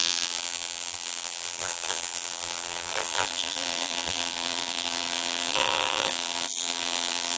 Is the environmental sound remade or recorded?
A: remade